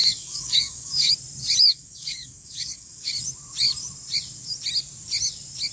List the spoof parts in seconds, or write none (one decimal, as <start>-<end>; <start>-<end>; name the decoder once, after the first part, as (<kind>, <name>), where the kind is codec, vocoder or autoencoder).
0.0-1.1 (codec, DAC); 1.7-3.1